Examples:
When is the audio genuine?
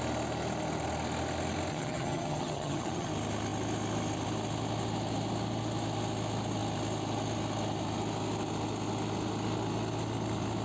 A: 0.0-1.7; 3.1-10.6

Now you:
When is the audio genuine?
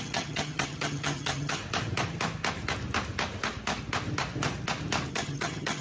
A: 1.6-5.1